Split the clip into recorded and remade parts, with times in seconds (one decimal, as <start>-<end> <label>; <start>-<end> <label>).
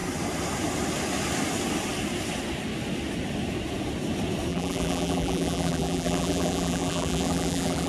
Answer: 0.0-4.5 recorded; 4.5-7.9 remade